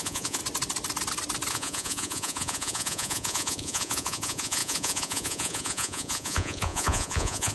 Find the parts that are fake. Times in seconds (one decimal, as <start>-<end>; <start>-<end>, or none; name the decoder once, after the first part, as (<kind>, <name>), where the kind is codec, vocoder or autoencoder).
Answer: 0.0-0.4 (vocoder, Vocos); 1.5-7.5